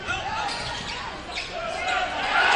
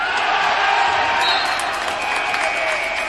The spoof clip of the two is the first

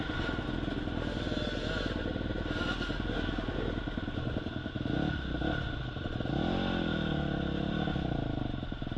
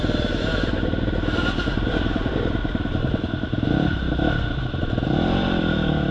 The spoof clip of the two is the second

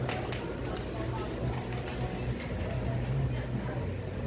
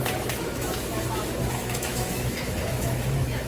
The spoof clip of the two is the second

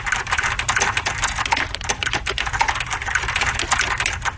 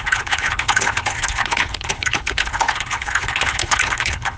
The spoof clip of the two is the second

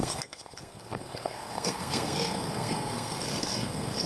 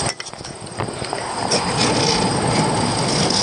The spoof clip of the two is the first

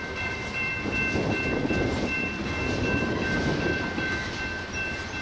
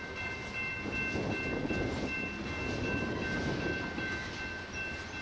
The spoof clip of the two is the first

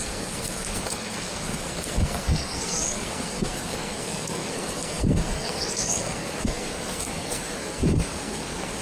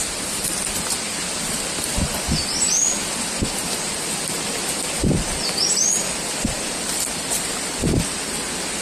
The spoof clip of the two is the first